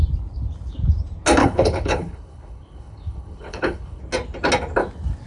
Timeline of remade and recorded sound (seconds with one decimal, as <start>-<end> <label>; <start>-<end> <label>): 0.0-1.4 recorded; 1.4-4.0 remade; 4.0-5.3 recorded